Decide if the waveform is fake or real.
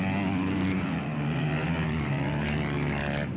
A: real